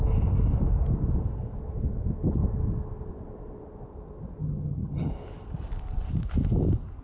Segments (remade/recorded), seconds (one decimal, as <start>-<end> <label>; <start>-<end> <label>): 0.0-4.4 recorded; 4.4-5.1 remade; 5.1-7.0 recorded